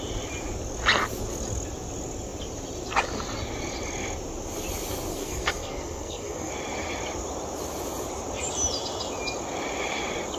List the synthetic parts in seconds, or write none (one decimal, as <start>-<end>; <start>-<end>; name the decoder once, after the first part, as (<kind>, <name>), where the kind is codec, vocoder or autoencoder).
5.1-6.5 (codec, SNAC)